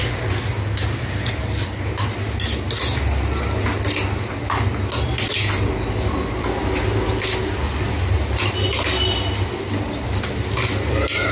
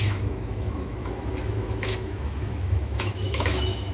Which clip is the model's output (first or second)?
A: second